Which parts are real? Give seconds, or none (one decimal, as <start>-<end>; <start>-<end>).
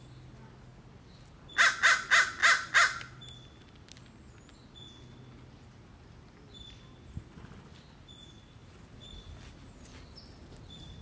0.0-11.0